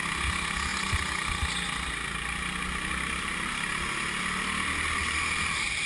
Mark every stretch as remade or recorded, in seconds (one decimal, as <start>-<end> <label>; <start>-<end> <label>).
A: 0.0-5.9 recorded